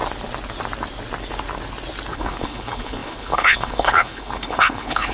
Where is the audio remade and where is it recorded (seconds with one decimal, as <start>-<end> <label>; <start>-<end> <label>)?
0.0-2.1 recorded; 2.1-5.1 remade